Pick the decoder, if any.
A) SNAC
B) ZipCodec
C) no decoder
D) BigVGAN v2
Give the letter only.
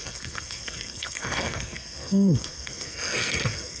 A